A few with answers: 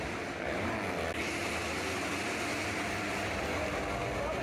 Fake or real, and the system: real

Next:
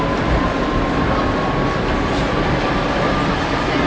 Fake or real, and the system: real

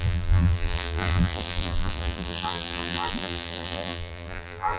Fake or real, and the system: fake, vocoder, BigVGAN v2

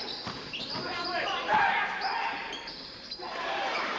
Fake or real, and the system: fake, vocoder, BigVGAN v2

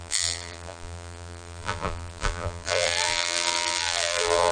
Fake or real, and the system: fake, vocoder, BigVGAN v2